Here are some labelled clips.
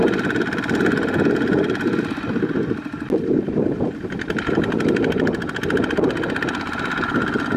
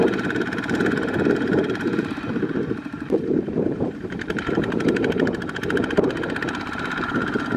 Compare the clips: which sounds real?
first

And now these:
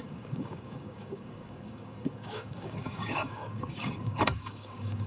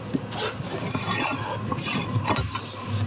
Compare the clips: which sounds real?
second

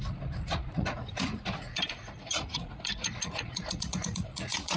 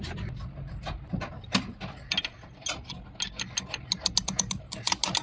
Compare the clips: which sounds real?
second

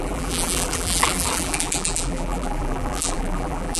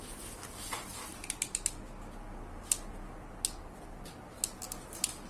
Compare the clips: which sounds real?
second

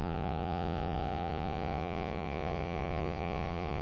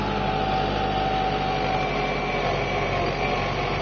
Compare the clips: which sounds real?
second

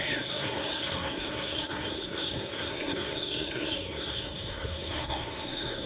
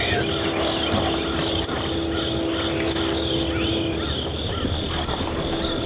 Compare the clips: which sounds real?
second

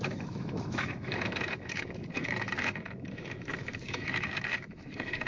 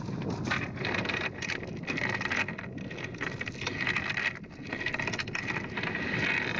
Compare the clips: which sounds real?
second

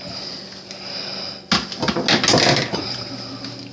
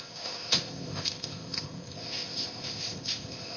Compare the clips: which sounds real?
first